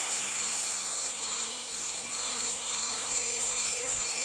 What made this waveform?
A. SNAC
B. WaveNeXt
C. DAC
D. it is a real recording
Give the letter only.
A